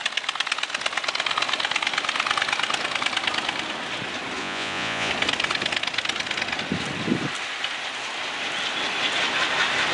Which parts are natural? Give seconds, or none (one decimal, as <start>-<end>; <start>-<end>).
0.0-4.4; 5.1-9.9